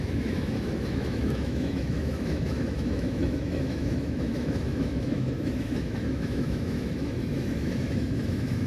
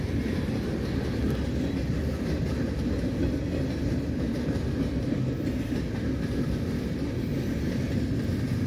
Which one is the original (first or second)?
second